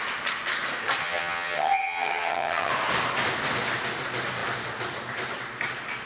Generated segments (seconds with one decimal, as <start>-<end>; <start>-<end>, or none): 1.0-2.7